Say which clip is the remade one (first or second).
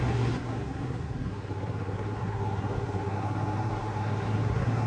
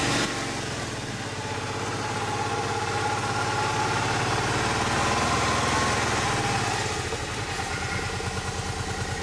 first